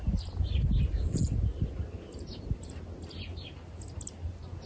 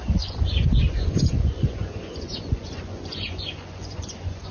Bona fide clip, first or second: first